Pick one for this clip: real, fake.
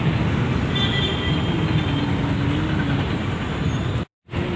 real